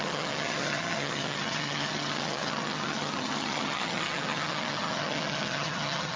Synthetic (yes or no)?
yes